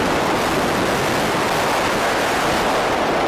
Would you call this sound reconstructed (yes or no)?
no